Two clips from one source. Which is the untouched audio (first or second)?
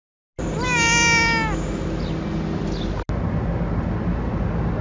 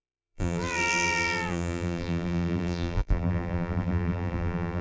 first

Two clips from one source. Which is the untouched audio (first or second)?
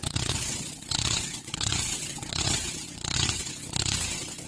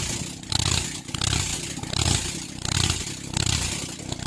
second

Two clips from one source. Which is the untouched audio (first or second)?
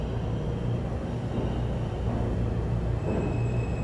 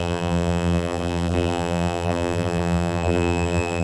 first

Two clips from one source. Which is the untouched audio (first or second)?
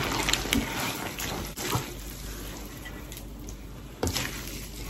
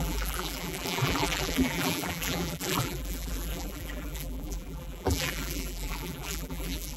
first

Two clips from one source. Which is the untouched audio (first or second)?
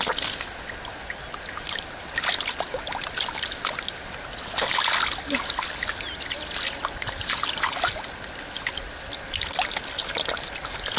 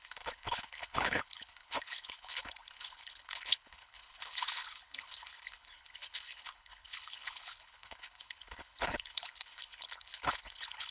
first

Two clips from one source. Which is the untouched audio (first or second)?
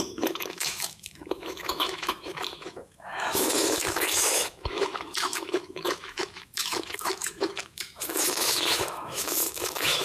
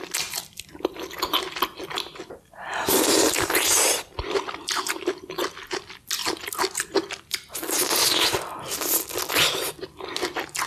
second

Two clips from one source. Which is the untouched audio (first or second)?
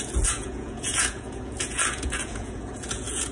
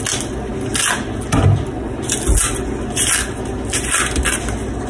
second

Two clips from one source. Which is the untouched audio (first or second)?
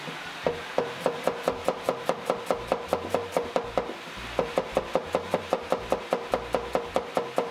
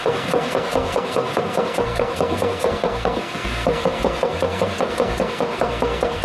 first